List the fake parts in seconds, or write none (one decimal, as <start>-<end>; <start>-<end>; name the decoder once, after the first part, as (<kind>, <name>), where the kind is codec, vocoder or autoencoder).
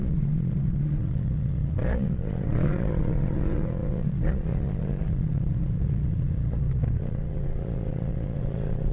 0.0-8.9 (vocoder, Vocos)